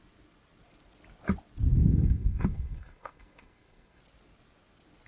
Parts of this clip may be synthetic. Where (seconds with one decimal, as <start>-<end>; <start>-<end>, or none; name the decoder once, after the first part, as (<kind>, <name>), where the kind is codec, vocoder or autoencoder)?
1.7-4.0 (codec, SNAC)